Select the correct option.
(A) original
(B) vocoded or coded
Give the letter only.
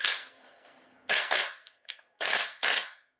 B